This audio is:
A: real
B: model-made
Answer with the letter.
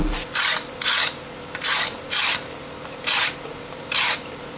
B